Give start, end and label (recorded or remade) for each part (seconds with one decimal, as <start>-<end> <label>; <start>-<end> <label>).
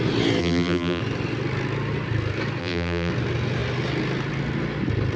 0.0-0.4 recorded; 0.4-1.0 remade; 1.0-2.6 recorded; 2.6-3.1 remade; 3.1-5.2 recorded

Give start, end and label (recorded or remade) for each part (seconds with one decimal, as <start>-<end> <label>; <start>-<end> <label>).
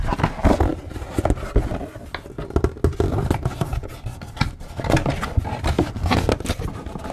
0.0-7.1 recorded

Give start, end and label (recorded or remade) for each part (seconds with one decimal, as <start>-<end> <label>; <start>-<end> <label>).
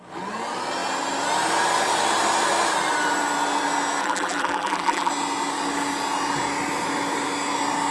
0.0-4.0 recorded; 4.0-5.1 remade; 5.1-7.9 recorded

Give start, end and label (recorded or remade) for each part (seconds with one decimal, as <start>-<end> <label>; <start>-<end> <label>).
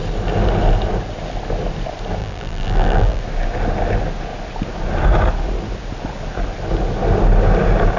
0.0-2.2 recorded; 2.2-3.2 remade; 3.2-8.0 recorded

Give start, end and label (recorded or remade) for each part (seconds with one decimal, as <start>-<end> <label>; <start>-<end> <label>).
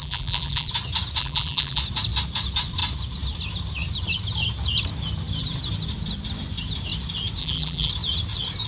0.0-0.7 remade; 0.7-1.2 recorded; 1.2-1.8 remade; 1.8-7.4 recorded; 7.4-7.9 remade; 7.9-8.7 recorded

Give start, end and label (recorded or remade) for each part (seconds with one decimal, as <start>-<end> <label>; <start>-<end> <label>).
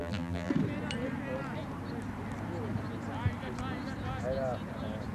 0.0-0.5 remade; 0.5-5.1 recorded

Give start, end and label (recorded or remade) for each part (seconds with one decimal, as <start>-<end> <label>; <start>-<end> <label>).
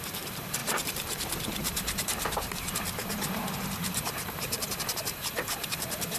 0.0-6.2 remade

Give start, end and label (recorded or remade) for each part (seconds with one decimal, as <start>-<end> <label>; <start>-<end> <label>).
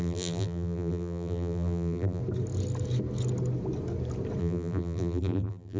0.0-2.2 remade; 2.2-4.4 recorded; 4.4-5.8 remade